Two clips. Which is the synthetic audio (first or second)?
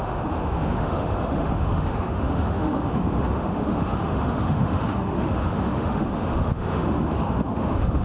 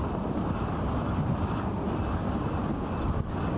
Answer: first